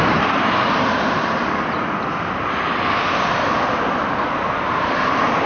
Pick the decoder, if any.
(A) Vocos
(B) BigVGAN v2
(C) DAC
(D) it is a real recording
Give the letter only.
B